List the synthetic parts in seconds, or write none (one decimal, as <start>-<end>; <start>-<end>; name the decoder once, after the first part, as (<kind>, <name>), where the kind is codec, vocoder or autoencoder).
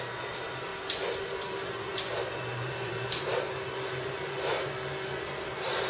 0.0-0.7 (vocoder, BigVGAN v2); 1.2-5.9